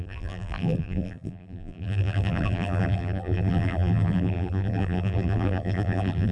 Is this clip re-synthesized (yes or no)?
yes